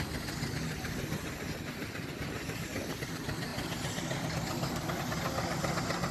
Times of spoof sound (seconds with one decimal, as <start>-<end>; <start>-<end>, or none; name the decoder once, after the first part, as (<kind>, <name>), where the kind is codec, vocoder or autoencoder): none